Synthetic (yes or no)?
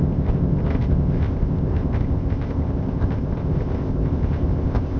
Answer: yes